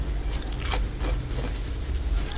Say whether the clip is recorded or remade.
recorded